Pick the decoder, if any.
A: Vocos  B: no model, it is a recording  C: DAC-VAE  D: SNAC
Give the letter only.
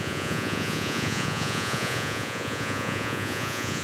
A